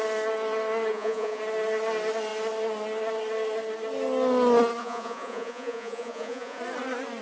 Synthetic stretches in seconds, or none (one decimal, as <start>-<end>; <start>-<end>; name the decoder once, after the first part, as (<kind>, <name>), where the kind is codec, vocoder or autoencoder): 0.9-1.4 (vocoder, Vocos); 4.8-6.6